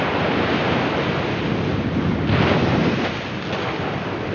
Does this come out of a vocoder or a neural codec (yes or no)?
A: no